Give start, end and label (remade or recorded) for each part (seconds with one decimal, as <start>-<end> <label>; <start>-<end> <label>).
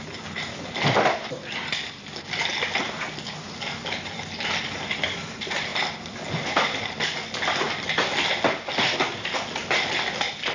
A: 0.0-10.5 recorded